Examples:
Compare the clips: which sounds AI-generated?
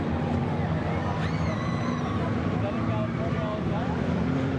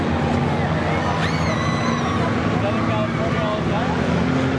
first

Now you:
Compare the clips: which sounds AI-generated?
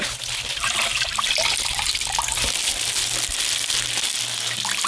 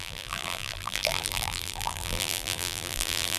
second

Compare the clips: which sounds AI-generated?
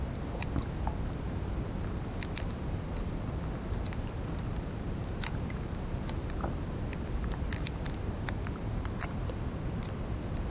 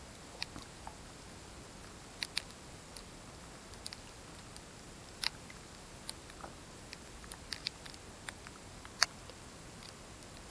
first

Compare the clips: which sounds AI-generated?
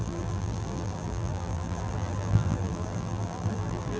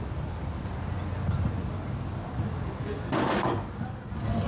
first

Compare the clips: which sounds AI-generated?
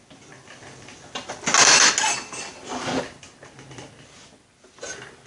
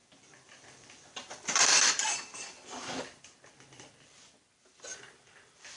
second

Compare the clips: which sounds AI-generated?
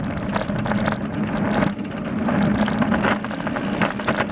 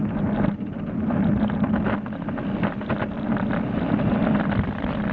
second